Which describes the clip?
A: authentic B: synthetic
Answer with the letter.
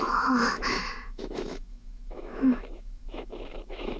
B